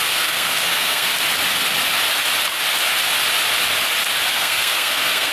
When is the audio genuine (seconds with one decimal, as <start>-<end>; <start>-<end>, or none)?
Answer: 1.1-4.3